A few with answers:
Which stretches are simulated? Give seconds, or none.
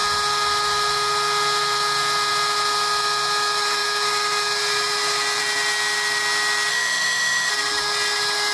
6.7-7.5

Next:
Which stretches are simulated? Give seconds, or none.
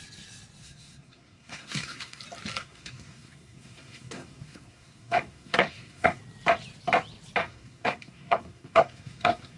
0.6-2.2; 2.6-6.2; 7.4-9.6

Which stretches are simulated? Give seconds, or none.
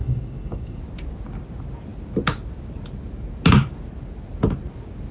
0.0-0.8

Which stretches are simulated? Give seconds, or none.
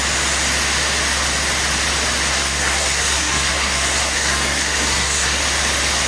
2.3-5.4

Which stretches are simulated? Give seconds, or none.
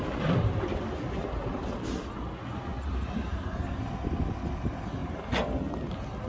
none